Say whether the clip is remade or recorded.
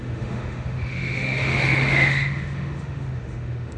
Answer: remade